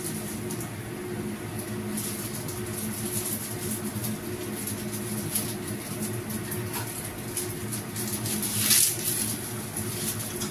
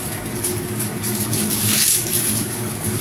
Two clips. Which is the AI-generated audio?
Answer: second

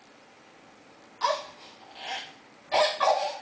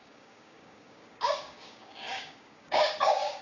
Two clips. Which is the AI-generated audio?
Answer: second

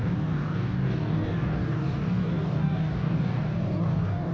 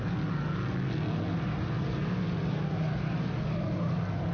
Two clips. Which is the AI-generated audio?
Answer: first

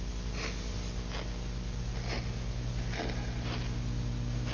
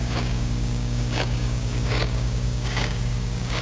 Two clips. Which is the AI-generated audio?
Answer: second